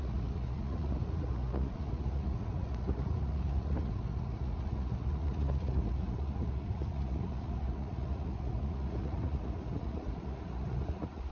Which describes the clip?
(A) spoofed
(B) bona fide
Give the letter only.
A